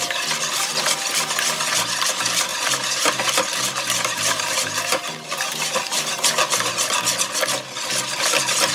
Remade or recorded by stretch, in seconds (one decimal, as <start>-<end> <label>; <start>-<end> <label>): 0.0-2.5 recorded; 2.5-6.1 remade; 6.1-8.7 recorded